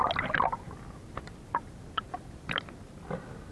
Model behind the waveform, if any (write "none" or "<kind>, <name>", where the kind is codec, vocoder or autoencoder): none